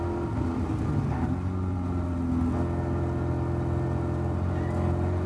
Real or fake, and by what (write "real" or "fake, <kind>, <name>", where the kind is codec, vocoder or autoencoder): real